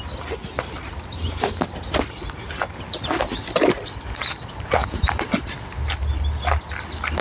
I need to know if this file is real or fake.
real